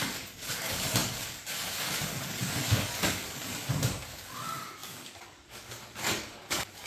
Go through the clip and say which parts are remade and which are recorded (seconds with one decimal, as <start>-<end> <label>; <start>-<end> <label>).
0.0-6.9 remade